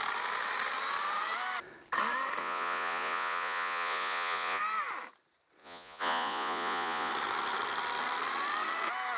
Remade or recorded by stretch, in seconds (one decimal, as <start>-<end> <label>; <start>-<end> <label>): 0.0-2.4 recorded; 2.4-4.6 remade; 4.6-5.6 recorded; 5.6-7.1 remade; 7.1-9.2 recorded